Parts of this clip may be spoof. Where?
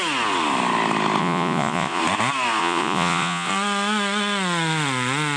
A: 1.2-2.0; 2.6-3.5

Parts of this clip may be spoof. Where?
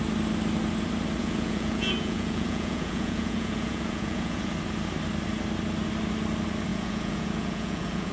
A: 1.2-4.5; 6.7-8.1